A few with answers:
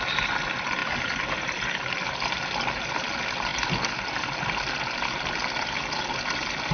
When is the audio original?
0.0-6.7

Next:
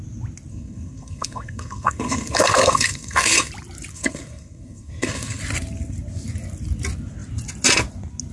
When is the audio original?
0.0-0.5; 3.5-3.9; 5.4-8.3

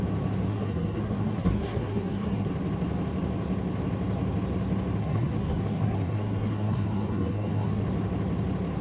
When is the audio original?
0.0-0.5; 2.5-5.0; 7.8-8.8

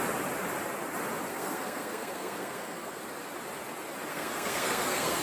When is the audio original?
0.0-1.3; 3.0-4.1

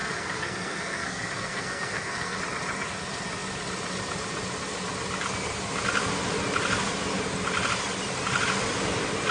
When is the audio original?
2.4-9.3

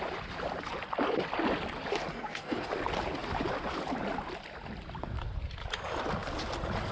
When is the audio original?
0.0-2.1; 2.7-6.9

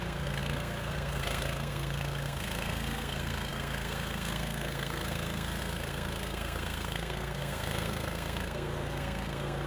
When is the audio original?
none